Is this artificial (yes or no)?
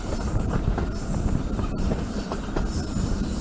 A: no